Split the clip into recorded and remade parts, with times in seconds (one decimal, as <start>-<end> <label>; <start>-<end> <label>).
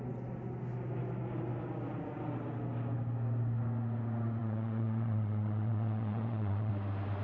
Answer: 0.0-4.4 recorded; 4.4-6.7 remade; 6.7-7.2 recorded